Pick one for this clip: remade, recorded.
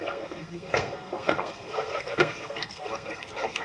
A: remade